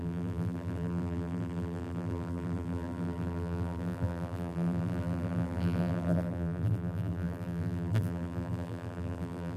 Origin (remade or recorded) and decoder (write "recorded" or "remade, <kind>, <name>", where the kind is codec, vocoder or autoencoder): remade, vocoder, BigVGAN v2